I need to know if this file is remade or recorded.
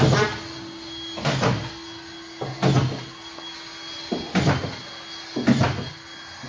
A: recorded